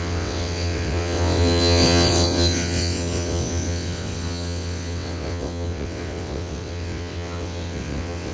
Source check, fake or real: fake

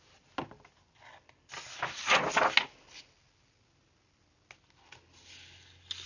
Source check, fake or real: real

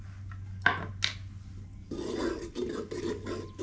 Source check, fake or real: real